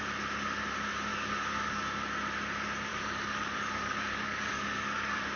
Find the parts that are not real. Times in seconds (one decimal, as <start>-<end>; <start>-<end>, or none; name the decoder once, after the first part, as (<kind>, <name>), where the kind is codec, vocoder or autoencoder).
1.1-1.8 (codec, DAC); 2.9-5.4